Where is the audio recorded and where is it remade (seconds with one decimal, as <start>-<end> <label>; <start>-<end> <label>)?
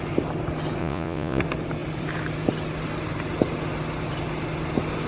0.0-0.8 recorded; 0.8-1.4 remade; 1.4-5.1 recorded